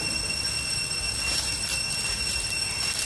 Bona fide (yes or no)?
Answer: yes